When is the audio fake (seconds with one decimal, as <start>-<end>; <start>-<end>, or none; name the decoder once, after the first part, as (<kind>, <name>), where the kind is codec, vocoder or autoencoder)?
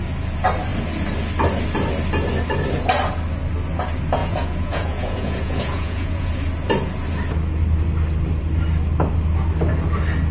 4.2-6.4 (vocoder, Vocos)